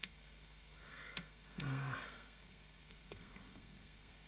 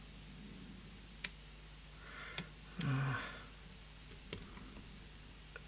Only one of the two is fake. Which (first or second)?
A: first